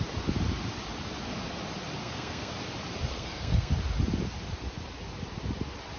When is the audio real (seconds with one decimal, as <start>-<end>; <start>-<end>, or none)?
0.0-2.0; 2.5-3.1; 3.7-6.0